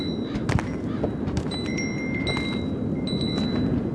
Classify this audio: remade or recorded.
recorded